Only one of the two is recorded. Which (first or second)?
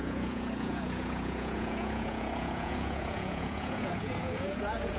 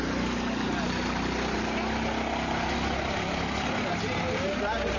second